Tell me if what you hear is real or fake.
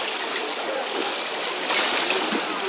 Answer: real